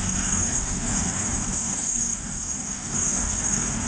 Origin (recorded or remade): remade